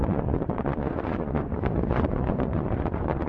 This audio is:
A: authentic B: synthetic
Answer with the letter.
B